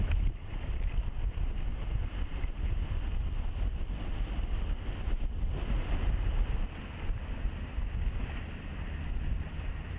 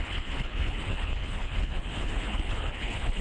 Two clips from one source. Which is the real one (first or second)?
first